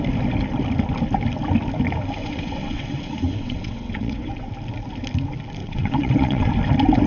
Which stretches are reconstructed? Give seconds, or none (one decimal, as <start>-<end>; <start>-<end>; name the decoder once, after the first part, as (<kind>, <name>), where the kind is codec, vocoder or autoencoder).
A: 2.2-4.5 (vocoder, WaveNeXt); 5.6-6.5